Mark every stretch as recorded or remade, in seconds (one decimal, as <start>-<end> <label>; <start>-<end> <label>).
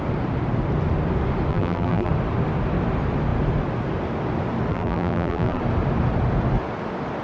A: 0.0-1.5 recorded; 1.5-2.1 remade; 2.1-4.7 recorded; 4.7-5.6 remade; 5.6-7.2 recorded